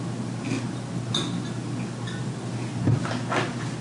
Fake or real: real